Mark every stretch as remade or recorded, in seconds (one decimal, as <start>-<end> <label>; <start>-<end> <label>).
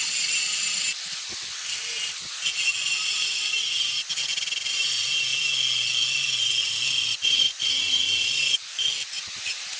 0.0-9.8 recorded